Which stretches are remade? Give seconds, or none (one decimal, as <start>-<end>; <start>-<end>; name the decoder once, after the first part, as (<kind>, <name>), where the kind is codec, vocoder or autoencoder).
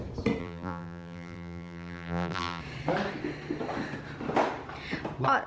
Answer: 0.4-2.6 (vocoder, BigVGAN v2)